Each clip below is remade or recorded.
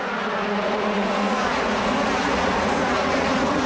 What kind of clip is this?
remade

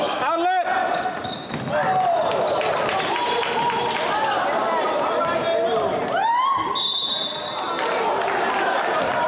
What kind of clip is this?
recorded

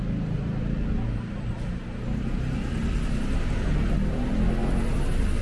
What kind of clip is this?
recorded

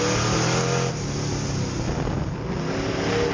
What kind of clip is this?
recorded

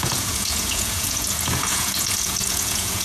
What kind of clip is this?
remade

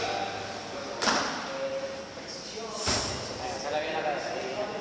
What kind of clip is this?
recorded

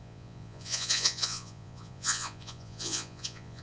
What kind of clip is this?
remade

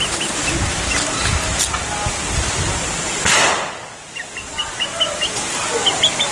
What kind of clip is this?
recorded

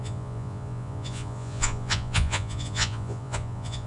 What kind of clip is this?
remade